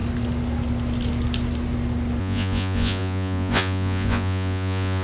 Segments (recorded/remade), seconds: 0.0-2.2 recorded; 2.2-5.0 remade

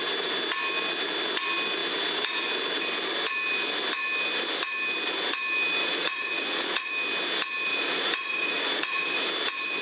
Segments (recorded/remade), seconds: 0.0-5.8 recorded; 5.8-6.9 remade; 6.9-7.7 recorded; 7.7-9.3 remade; 9.3-9.8 recorded

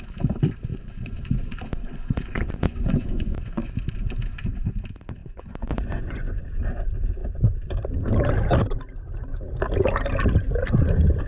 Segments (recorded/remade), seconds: 0.0-0.7 recorded; 0.7-3.7 remade; 3.7-5.2 recorded; 5.2-6.4 remade; 6.4-11.3 recorded